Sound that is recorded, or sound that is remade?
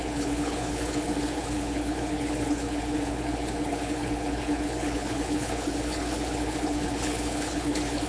remade